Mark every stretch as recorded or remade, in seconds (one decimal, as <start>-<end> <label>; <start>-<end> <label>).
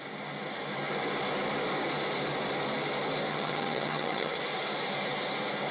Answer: 0.0-3.3 recorded; 3.3-4.4 remade; 4.4-5.7 recorded